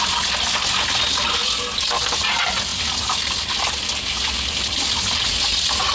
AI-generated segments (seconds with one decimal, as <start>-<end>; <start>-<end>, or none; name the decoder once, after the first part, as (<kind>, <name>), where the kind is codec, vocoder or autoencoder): none